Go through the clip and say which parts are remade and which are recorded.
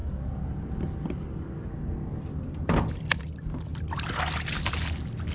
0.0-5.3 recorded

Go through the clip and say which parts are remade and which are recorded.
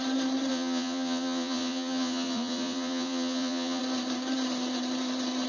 0.0-0.5 recorded; 0.5-3.8 remade; 3.8-5.5 recorded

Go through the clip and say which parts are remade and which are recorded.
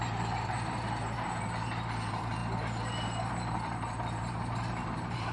0.0-2.4 remade; 2.4-3.3 recorded; 3.3-5.3 remade